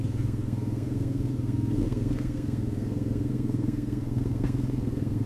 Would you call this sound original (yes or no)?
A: no